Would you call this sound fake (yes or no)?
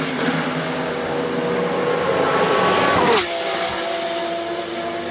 no